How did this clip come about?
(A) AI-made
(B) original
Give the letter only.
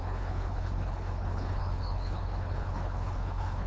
A